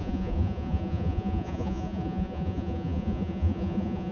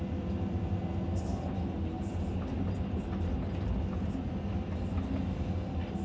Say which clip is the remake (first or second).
first